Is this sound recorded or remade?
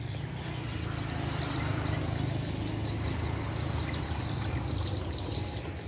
recorded